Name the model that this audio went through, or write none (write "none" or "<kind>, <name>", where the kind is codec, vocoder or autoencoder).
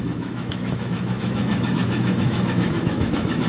autoencoder, DAC-VAE